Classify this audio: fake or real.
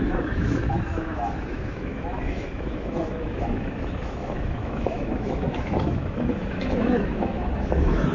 fake